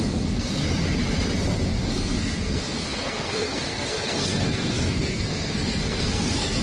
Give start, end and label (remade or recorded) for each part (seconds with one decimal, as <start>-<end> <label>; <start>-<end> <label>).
0.0-0.6 remade; 0.6-1.9 recorded; 1.9-6.6 remade